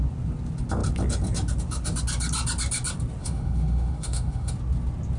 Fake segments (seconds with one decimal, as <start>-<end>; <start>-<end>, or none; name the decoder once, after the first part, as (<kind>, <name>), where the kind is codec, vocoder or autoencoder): 3.2-4.5 (autoencoder, DAC-VAE)